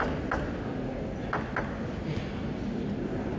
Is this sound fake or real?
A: real